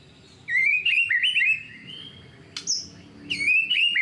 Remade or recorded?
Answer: recorded